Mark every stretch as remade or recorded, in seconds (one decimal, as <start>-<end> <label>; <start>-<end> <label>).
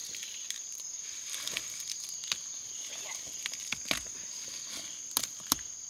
0.0-0.8 remade; 0.8-5.9 recorded